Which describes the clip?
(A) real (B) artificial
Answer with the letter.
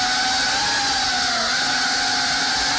A